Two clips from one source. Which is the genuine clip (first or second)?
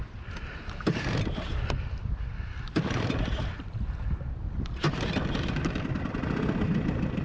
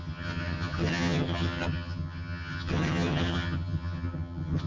first